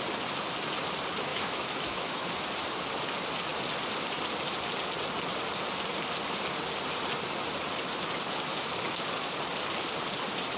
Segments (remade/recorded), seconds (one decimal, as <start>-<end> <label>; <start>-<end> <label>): 0.0-1.3 recorded; 1.3-2.3 remade; 2.3-10.6 recorded